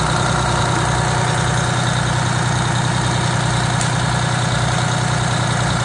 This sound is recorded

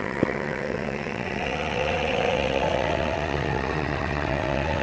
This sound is remade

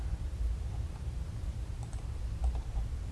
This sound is remade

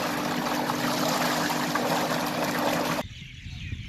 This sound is recorded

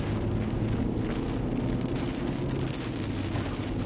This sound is recorded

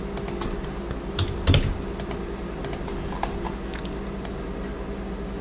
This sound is recorded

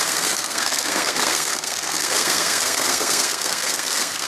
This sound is remade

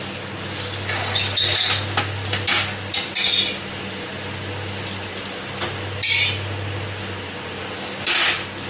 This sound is recorded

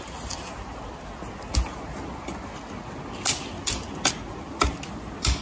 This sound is recorded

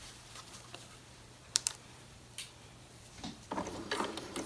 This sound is remade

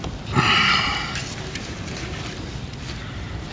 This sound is recorded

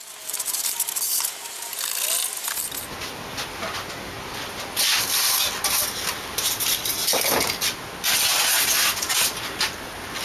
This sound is recorded